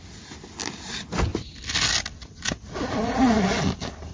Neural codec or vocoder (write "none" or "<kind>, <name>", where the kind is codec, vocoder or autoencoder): none